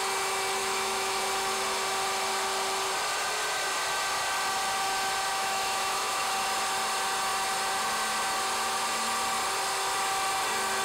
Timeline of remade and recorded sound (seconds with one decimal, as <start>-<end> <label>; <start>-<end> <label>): 0.0-0.6 recorded; 0.6-1.2 remade; 1.2-5.3 recorded; 5.3-6.3 remade; 6.3-10.8 recorded